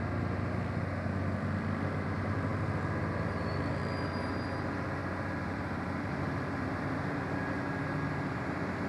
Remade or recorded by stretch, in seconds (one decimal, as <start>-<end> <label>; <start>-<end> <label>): 0.0-5.0 recorded; 5.0-6.2 remade; 6.2-8.9 recorded